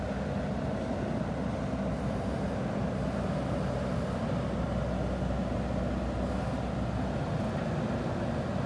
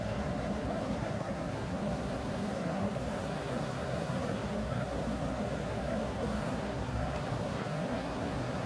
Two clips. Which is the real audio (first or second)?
first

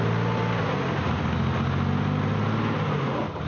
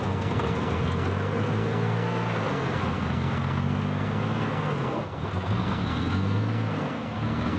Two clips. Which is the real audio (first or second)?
first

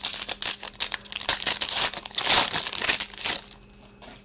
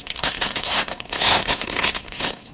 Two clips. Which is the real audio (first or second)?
first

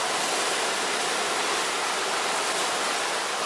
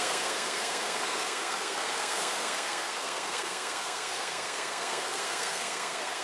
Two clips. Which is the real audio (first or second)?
first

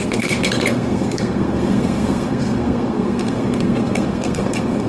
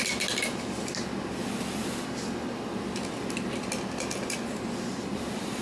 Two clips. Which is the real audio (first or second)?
second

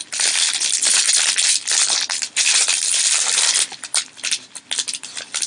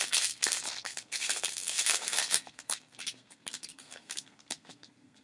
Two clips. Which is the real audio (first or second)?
first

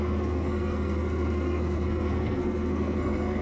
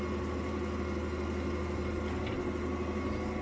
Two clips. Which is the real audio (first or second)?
second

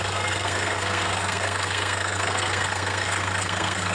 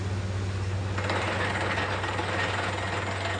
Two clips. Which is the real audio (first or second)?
second